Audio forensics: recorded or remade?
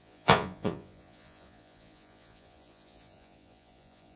remade